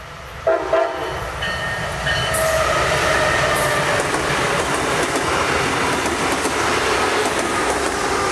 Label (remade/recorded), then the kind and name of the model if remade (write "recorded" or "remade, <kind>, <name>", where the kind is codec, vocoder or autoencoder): recorded